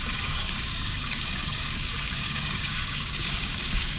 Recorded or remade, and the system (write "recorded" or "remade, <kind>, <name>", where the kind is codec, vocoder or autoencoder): remade, codec, DAC